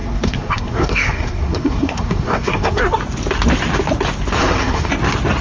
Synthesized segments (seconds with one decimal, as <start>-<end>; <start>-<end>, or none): 0.0-2.8; 4.4-4.9